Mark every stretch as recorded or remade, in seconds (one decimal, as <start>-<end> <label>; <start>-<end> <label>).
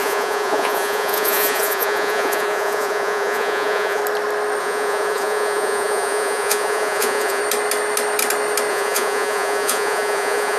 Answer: 0.0-4.0 remade; 4.0-4.6 recorded; 4.6-7.4 remade; 7.4-8.7 recorded; 8.7-10.6 remade